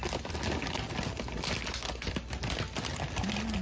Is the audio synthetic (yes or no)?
no